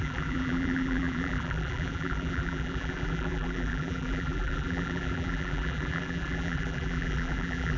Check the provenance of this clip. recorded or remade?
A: remade